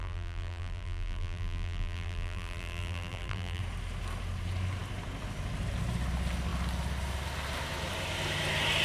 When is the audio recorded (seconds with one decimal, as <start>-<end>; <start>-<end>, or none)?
3.6-8.8